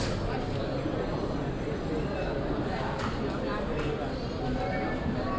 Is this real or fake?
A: real